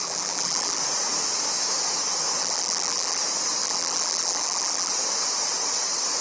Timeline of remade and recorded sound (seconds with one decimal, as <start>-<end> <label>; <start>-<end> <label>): 0.0-0.8 remade; 0.8-2.4 recorded; 2.4-3.2 remade; 3.2-3.6 recorded; 3.6-4.9 remade; 4.9-6.2 recorded